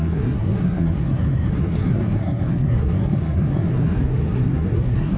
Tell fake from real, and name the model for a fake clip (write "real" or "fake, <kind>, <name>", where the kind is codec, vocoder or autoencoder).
fake, codec, SNAC